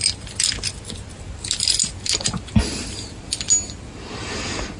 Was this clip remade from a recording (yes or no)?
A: no